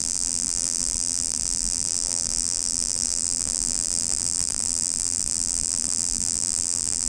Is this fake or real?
fake